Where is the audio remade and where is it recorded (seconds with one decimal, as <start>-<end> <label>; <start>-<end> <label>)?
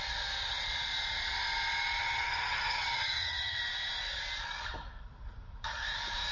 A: 0.0-2.0 recorded; 2.0-3.6 remade; 3.6-6.3 recorded